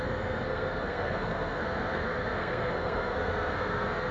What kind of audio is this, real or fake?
fake